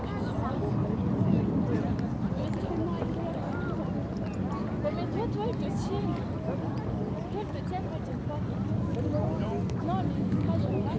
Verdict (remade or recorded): recorded